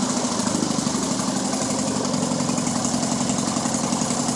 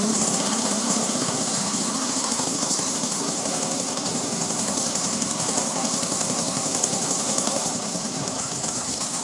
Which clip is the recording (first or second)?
first